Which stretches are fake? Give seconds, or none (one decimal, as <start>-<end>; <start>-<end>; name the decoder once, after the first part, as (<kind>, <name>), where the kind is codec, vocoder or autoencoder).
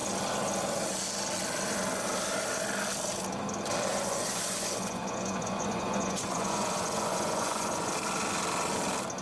3.9-7.9 (vocoder, Vocos)